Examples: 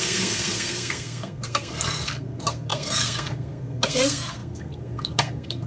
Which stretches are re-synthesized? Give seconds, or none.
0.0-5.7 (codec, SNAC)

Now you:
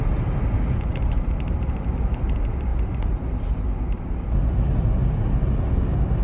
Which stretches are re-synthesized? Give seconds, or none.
0.9-1.7 (vocoder, BigVGAN v2); 2.7-4.3

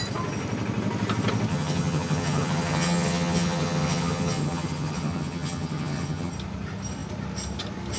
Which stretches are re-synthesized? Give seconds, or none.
1.5-6.3 (vocoder, HiFi-GAN)

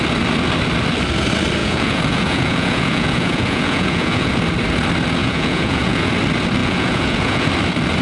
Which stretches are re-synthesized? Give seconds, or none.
1.6-4.3 (vocoder, Vocos); 5.2-6.1; 6.6-7.5

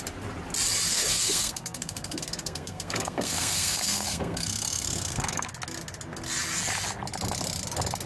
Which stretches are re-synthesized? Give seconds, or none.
0.9-5.5 (codec, SNAC)